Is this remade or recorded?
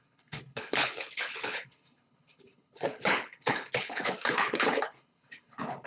remade